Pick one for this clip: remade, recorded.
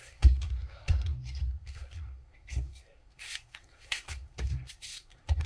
remade